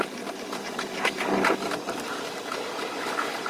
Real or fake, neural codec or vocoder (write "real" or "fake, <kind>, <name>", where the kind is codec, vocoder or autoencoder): real